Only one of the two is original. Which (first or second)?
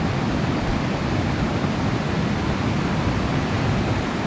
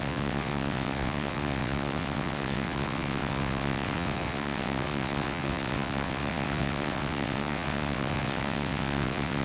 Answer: first